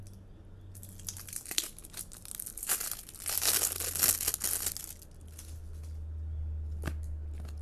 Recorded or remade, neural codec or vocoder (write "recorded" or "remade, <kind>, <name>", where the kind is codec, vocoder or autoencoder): recorded